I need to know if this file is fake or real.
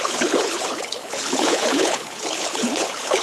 fake